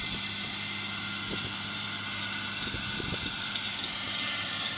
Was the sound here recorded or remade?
remade